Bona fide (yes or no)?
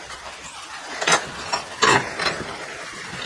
yes